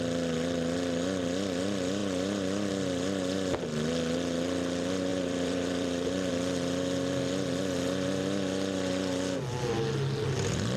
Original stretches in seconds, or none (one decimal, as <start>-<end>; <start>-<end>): 0.0-5.1; 6.3-10.8